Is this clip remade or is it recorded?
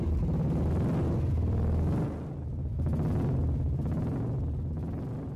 recorded